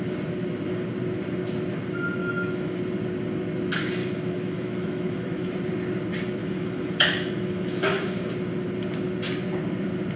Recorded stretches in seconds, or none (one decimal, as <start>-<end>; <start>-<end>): 0.0-2.2; 2.8-4.0; 5.5-6.4; 8.3-10.2